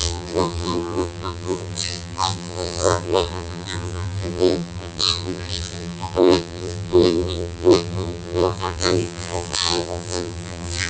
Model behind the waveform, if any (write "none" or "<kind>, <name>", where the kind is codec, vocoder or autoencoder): vocoder, BigVGAN v2